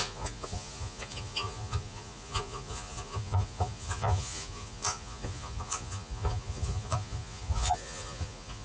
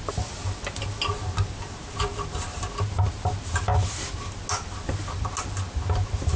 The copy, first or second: first